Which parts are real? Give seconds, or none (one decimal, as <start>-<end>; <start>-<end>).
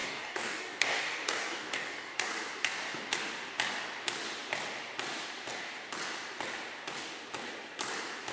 2.3-8.3